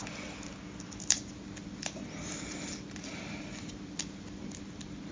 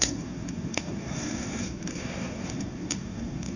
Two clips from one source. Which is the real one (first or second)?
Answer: first